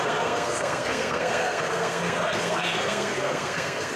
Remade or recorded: remade